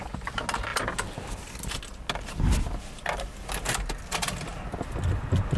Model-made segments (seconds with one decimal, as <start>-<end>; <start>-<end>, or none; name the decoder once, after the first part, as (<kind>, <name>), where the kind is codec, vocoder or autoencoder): none